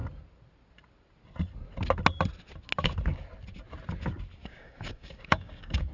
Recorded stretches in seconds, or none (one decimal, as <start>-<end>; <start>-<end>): 0.0-4.4

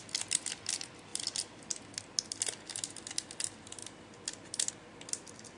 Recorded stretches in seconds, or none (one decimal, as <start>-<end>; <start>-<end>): 0.0-5.6

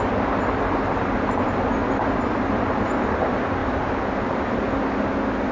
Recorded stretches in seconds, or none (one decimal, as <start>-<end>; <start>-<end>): 0.0-5.5

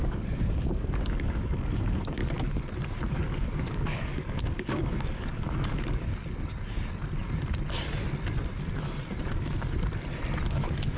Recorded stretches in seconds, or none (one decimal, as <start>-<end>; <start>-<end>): 2.2-3.1; 6.1-10.5

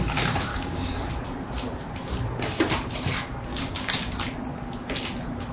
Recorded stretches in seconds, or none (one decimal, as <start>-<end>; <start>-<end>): 0.0-0.5; 1.0-3.5; 4.1-5.5

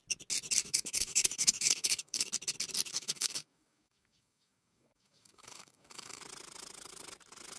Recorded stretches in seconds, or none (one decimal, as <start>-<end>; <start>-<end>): 0.0-0.6; 2.3-2.9; 6.2-7.6

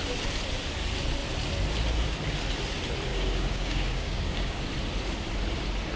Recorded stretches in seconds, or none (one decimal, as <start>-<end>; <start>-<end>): 0.0-3.1; 4.6-6.0

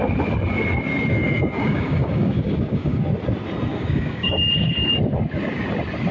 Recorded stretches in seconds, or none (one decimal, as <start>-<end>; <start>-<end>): 0.0-1.1; 3.0-3.7; 4.9-6.1